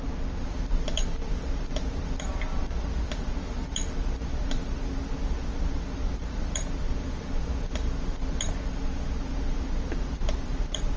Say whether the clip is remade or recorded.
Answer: recorded